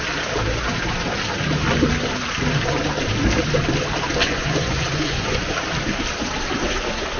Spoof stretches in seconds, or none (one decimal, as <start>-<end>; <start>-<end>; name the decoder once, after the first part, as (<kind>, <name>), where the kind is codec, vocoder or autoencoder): 4.2-5.5 (vocoder, Vocos)